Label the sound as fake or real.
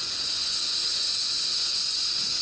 fake